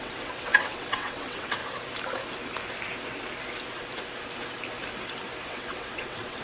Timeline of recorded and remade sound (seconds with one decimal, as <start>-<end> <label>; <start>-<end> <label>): 0.0-1.6 remade; 1.6-5.4 recorded; 5.4-6.4 remade